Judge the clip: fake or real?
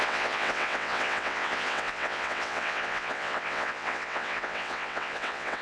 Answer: fake